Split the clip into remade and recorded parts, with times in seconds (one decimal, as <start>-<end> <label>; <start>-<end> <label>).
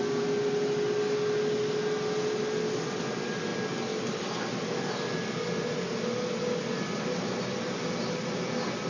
0.0-8.9 recorded